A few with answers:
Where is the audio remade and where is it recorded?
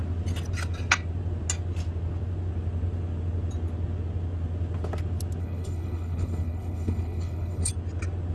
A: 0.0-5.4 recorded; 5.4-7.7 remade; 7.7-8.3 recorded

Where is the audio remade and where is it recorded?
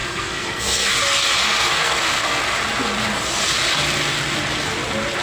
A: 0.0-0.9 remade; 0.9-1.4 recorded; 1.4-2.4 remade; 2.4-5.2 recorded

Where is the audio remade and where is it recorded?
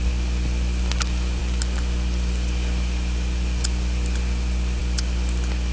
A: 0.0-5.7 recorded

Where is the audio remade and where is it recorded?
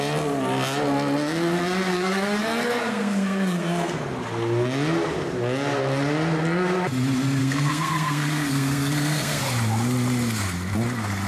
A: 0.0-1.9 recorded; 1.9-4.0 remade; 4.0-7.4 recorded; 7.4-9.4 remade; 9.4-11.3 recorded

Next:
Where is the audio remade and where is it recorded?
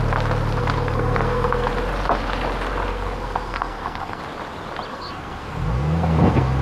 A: 0.0-0.6 recorded; 0.6-1.7 remade; 1.7-2.9 recorded; 2.9-4.2 remade; 4.2-4.9 recorded; 4.9-6.6 remade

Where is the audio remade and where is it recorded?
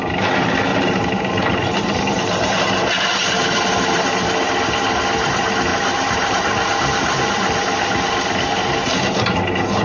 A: 0.0-0.7 recorded; 0.7-2.6 remade; 2.6-5.7 recorded; 5.7-9.8 remade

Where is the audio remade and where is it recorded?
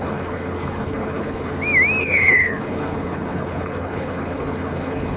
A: 0.0-1.5 remade; 1.5-2.0 recorded; 2.0-5.2 remade